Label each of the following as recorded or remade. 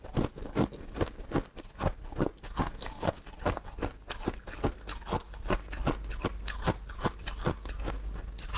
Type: recorded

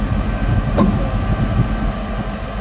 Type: recorded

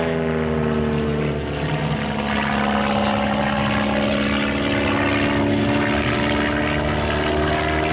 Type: recorded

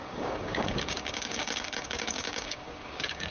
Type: remade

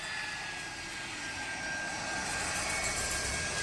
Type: recorded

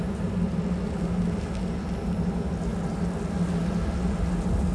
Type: recorded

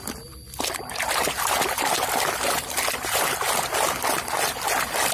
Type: recorded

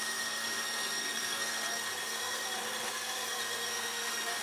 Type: remade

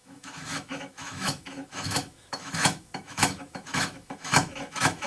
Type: remade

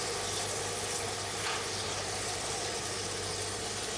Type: recorded